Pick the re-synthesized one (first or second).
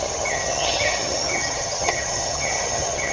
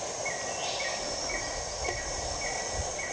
first